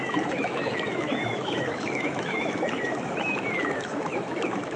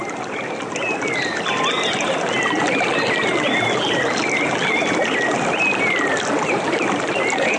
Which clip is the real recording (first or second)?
second